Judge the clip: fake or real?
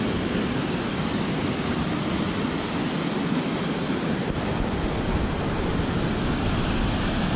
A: real